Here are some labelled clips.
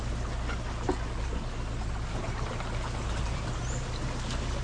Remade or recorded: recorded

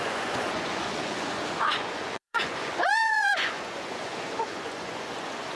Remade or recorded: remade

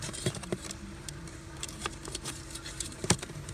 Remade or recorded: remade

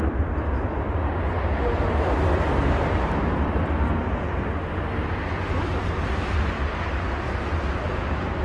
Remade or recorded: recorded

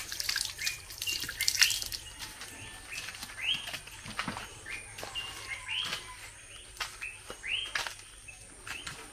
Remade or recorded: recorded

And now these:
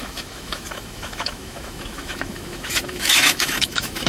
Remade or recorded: remade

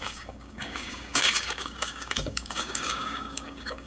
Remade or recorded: remade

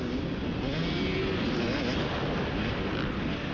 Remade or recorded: recorded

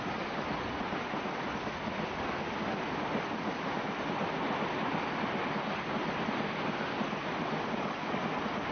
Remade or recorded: recorded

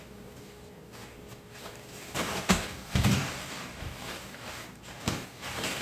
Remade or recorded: remade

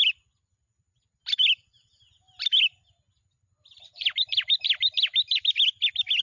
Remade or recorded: recorded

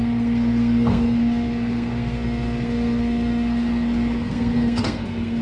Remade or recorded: remade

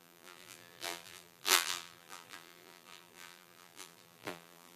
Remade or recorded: remade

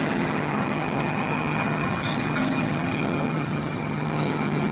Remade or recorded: remade